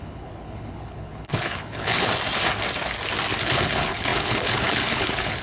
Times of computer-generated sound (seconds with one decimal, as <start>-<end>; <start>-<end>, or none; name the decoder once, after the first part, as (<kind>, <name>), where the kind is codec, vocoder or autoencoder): 0.0-2.1 (codec, HILCodec); 3.4-5.4